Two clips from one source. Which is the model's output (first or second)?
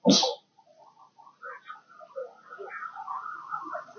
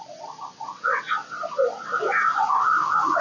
second